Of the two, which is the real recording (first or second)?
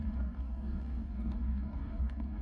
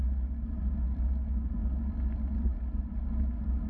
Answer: second